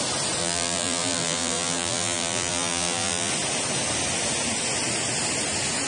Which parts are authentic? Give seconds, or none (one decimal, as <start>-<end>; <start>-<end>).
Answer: 0.0-0.4; 3.3-5.9